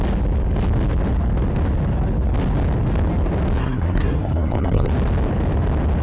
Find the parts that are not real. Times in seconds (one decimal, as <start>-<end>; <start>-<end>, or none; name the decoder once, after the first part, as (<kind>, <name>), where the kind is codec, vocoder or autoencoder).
3.6-4.9 (codec, SNAC)

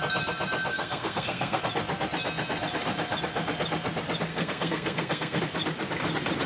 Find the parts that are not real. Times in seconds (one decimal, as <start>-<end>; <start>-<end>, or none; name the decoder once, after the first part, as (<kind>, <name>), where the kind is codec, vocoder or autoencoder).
0.7-1.6 (codec, SNAC); 4.3-5.4

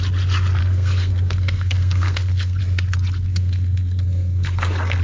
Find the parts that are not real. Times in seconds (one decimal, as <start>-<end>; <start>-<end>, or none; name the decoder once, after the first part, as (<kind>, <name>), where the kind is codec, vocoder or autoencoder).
0.6-2.6 (codec, SNAC); 3.3-5.0

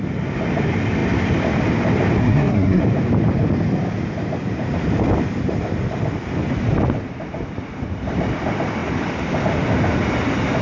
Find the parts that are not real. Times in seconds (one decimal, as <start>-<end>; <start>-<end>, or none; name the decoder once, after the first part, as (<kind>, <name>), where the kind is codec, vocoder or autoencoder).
2.2-2.8 (codec, SNAC)

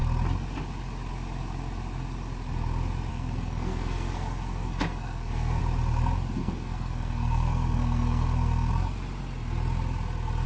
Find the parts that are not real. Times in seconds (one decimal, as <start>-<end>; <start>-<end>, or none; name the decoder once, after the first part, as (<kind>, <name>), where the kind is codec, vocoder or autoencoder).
3.1-5.6 (codec, SNAC); 6.4-8.7

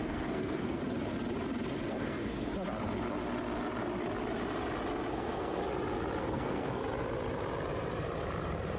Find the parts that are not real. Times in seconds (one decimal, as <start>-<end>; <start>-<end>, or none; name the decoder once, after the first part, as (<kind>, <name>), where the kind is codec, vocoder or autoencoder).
0.0-0.8 (codec, SNAC); 1.9-2.5; 5.1-5.6; 6.2-6.8

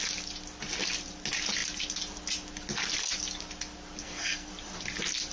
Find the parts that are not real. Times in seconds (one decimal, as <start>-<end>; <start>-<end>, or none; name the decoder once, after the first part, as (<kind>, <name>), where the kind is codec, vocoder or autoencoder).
4.0-4.5 (codec, SNAC)

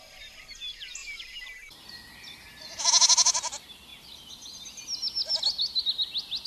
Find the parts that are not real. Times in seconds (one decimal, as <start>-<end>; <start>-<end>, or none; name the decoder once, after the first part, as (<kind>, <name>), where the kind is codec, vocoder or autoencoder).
none